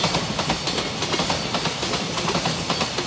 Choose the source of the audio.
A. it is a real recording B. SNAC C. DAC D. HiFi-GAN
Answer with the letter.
A